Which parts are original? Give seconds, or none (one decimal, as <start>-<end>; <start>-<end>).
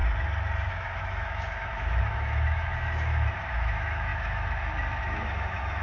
0.0-0.7